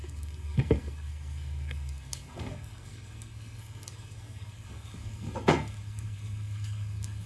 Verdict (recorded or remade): remade